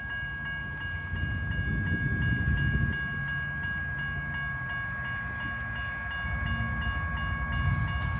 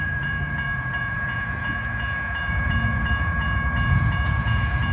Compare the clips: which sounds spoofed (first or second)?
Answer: second